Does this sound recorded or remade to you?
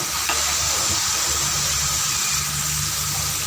recorded